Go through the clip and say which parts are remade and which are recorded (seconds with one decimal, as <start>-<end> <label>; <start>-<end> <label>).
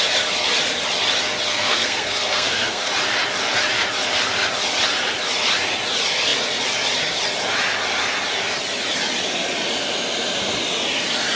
0.0-1.5 recorded; 1.5-2.9 remade; 2.9-11.4 recorded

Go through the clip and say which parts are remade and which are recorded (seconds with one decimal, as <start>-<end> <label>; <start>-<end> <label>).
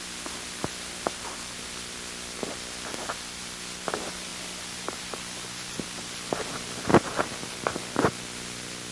0.0-8.9 recorded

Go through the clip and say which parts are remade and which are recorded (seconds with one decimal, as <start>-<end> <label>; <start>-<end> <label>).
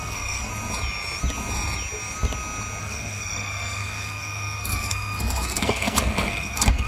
0.0-0.5 remade; 0.5-2.8 recorded; 2.8-6.9 remade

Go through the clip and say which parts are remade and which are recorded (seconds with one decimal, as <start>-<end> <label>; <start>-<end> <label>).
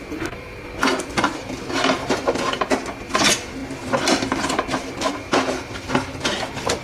0.0-6.8 recorded